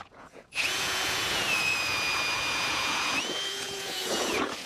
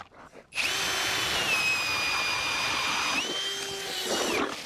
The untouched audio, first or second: second